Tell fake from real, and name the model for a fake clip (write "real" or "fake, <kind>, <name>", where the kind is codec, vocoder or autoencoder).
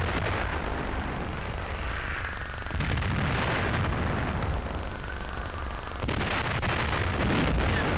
real